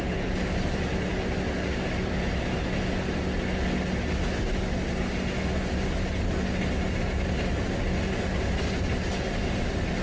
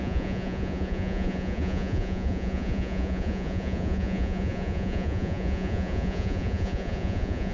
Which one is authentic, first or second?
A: first